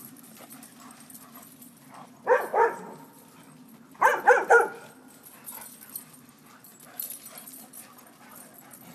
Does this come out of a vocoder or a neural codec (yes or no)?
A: no